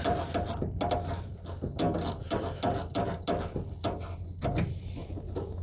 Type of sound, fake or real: real